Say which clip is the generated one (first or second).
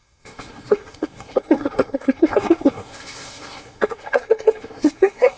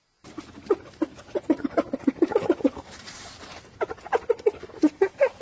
first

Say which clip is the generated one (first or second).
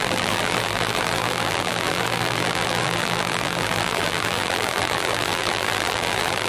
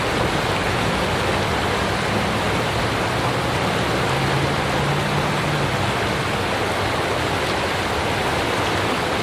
first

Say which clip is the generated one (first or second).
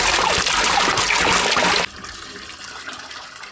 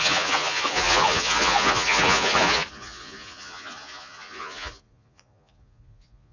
second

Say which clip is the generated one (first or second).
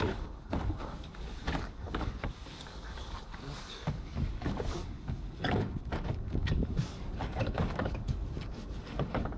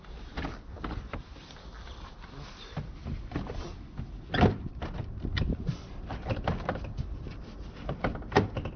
first